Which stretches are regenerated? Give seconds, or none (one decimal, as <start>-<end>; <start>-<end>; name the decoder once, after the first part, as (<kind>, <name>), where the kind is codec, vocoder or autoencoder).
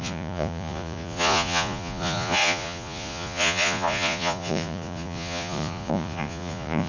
0.0-6.9 (vocoder, Vocos)